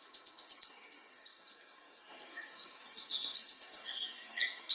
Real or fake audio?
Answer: fake